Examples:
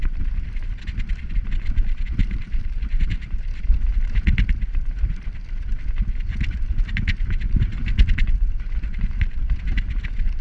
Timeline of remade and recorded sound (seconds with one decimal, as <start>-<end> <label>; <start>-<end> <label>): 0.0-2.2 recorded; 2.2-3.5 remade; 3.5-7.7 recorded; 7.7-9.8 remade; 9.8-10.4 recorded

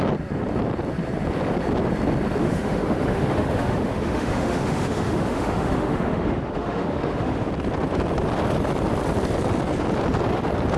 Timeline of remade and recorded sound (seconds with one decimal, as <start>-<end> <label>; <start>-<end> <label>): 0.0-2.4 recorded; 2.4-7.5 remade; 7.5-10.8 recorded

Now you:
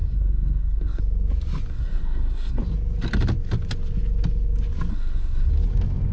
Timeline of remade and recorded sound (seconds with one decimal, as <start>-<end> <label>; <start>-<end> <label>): 0.0-1.0 remade; 1.0-1.7 recorded; 1.7-2.6 remade; 2.6-4.9 recorded; 4.9-5.5 remade; 5.5-6.1 recorded

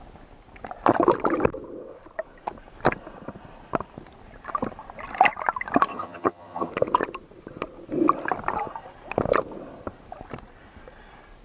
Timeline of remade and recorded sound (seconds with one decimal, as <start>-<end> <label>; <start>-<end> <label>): 0.0-5.9 recorded; 5.9-6.7 remade; 6.7-11.4 recorded

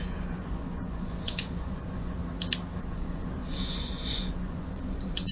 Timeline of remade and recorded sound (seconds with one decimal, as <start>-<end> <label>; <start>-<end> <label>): 0.0-2.2 remade; 2.2-2.8 recorded; 2.8-5.3 remade

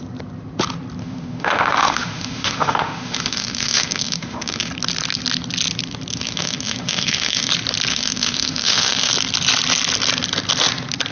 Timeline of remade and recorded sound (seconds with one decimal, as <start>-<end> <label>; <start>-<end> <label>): 0.0-1.0 recorded; 1.0-4.7 remade; 4.7-6.1 recorded; 6.1-7.5 remade; 7.5-7.9 recorded; 7.9-9.1 remade; 9.1-11.1 recorded